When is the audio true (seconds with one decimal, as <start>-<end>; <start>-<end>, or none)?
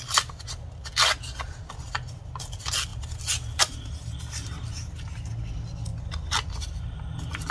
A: 0.0-5.9; 7.0-7.5